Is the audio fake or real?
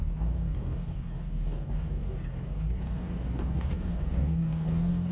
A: fake